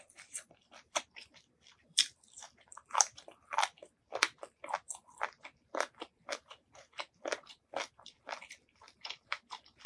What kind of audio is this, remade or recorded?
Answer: remade